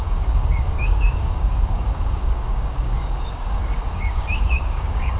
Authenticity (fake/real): fake